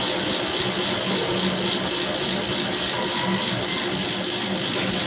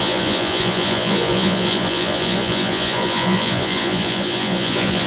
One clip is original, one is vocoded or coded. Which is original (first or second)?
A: first